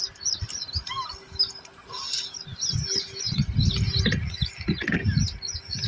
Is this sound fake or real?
real